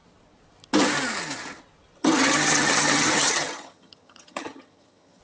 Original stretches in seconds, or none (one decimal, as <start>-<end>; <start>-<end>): 0.0-2.0